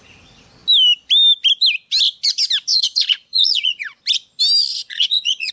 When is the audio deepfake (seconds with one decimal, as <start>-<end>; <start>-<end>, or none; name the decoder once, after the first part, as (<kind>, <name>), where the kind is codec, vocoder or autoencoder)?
2.7-4.0 (vocoder, Vocos); 4.7-5.5